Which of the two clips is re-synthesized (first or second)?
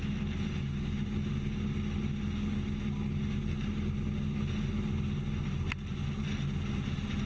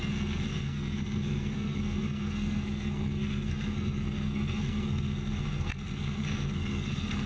second